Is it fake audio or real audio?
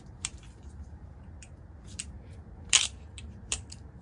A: fake